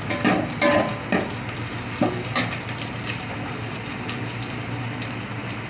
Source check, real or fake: real